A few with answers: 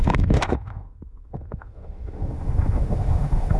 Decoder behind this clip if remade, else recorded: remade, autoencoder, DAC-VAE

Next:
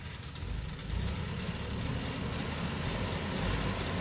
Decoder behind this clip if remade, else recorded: recorded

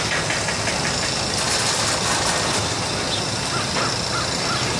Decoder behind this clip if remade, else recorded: recorded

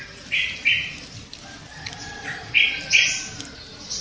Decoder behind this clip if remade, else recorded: recorded